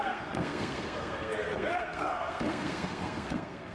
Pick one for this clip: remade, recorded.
remade